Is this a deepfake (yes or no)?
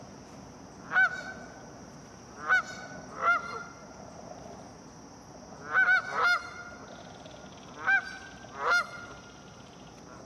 no